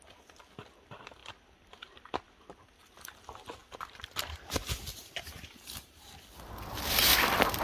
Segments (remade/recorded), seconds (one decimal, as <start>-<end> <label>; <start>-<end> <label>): 0.0-3.6 recorded; 3.6-4.4 remade; 4.4-4.9 recorded; 4.9-6.1 remade; 6.1-7.6 recorded